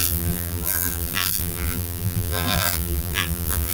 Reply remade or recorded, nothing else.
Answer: remade